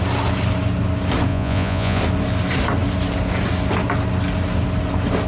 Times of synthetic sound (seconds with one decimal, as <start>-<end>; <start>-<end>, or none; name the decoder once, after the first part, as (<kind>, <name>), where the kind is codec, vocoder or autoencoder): 1.3-2.0 (vocoder, Vocos)